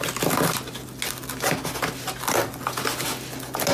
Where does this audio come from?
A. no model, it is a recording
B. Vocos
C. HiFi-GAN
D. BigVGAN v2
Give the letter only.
A